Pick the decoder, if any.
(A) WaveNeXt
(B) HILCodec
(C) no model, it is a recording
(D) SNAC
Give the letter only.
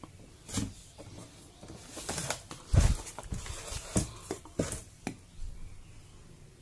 C